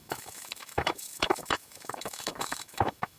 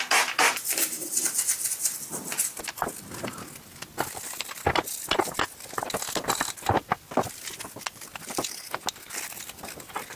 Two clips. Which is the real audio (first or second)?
second